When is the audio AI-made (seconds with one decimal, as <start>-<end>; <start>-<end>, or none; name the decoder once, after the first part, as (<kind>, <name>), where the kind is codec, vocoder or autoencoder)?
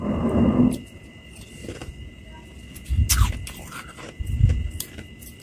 none